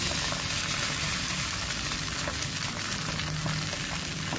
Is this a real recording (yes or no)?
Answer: yes